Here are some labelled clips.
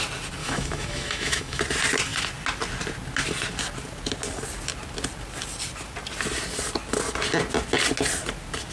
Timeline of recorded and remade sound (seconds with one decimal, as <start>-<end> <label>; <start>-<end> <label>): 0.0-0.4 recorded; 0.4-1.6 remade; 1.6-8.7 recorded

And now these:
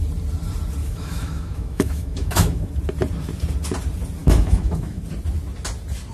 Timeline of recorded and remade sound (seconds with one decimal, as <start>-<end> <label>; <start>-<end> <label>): 0.0-0.8 recorded; 0.8-2.7 remade; 2.7-4.2 recorded; 4.2-5.0 remade; 5.0-6.1 recorded

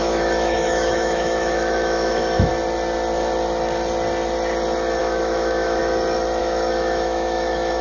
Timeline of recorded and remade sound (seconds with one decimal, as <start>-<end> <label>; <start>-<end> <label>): 0.0-2.5 remade; 2.5-5.0 recorded; 5.0-5.8 remade; 5.8-6.4 recorded; 6.4-7.8 remade

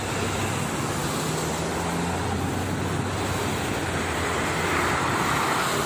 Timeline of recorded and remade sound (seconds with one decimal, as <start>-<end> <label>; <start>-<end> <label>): 0.0-5.9 recorded

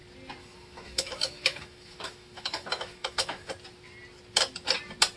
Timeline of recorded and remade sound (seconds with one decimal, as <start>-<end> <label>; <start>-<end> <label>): 0.0-0.4 recorded; 0.4-3.5 remade; 3.5-5.2 recorded

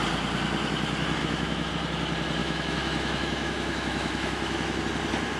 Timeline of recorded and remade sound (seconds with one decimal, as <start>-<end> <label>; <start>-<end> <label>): 0.0-1.2 recorded; 1.2-1.7 remade; 1.7-2.4 recorded; 2.4-4.8 remade; 4.8-5.4 recorded

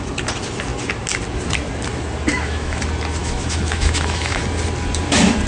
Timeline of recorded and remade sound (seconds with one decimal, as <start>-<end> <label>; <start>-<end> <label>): 0.0-2.3 recorded; 2.3-2.8 remade; 2.8-3.2 recorded; 3.2-4.4 remade; 4.4-5.5 recorded

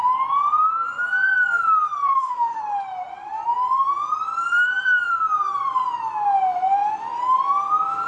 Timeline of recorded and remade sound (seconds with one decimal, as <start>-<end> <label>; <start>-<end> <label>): 0.0-2.1 recorded; 2.1-2.6 remade; 2.6-8.1 recorded